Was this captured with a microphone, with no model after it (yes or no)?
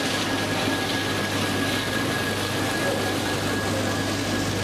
yes